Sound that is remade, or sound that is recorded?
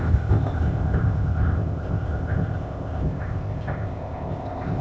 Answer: remade